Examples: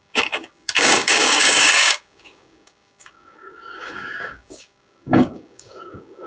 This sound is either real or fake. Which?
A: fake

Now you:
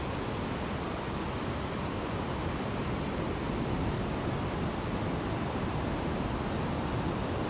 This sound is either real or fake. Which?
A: real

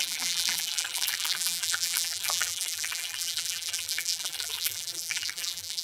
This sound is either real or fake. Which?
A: fake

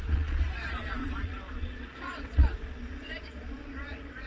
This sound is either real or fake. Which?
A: fake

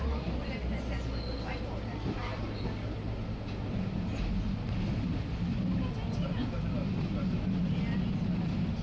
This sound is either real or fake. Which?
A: real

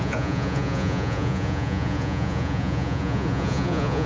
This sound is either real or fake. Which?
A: fake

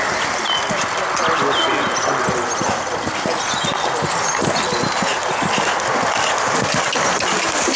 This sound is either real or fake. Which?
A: real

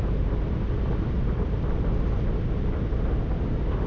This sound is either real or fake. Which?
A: real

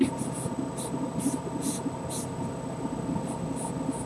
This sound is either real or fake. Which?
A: real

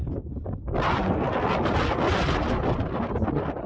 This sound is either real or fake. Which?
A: real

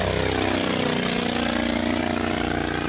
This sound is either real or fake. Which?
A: real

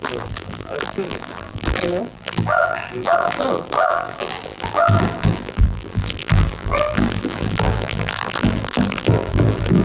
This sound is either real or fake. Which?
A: fake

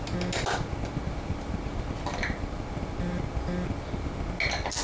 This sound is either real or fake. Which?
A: real